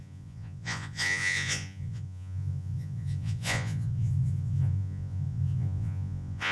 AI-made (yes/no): yes